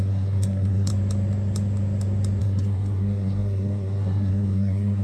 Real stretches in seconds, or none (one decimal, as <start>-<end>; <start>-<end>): 0.9-2.4